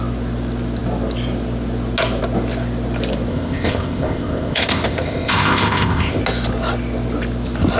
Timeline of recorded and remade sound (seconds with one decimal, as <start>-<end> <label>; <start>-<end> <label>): 0.0-3.3 recorded; 3.3-6.2 remade; 6.2-7.8 recorded